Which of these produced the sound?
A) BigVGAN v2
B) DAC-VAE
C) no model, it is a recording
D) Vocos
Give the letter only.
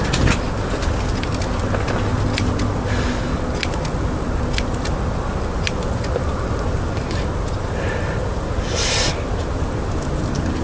C